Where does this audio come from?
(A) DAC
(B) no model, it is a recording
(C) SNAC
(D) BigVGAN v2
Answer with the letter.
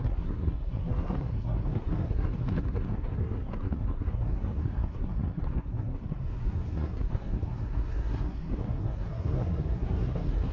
C